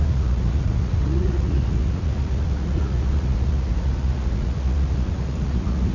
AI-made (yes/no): yes